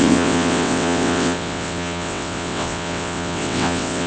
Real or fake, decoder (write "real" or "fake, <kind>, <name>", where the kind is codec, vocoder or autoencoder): fake, vocoder, WaveNeXt